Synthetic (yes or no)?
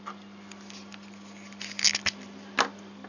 no